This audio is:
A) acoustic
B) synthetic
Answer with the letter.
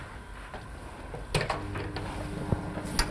A